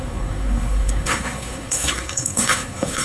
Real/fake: fake